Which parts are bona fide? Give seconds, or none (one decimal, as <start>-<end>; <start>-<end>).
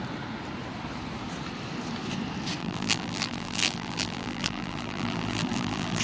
0.0-2.6